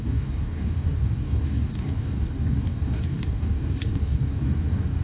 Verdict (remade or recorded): remade